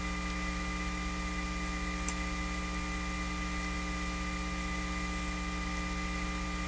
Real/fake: real